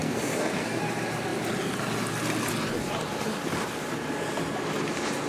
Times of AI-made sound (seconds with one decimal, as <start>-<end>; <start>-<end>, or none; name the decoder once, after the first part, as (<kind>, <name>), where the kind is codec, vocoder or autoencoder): 0.0-0.8 (codec, SNAC)